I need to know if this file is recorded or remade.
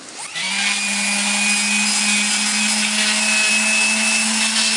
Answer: recorded